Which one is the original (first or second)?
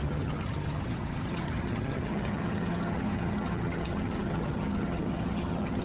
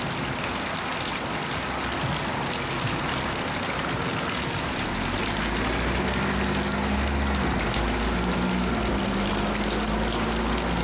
second